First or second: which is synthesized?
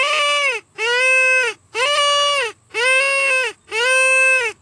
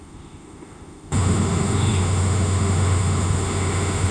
second